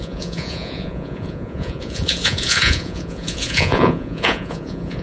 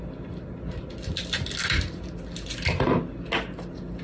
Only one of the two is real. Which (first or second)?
second